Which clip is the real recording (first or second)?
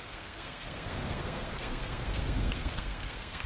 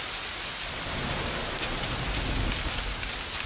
second